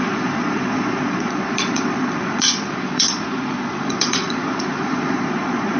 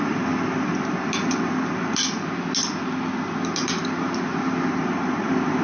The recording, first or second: second